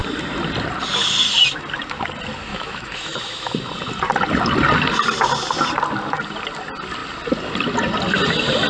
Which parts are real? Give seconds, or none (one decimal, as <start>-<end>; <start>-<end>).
0.0-2.5; 3.5-8.7